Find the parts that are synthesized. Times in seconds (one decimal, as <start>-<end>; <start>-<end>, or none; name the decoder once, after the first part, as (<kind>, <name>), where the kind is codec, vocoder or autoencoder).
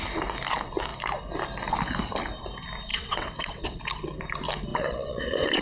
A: 2.9-3.8 (vocoder, WaveNeXt); 4.7-5.6